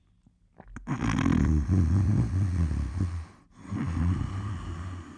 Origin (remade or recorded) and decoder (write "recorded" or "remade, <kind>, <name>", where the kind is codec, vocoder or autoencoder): recorded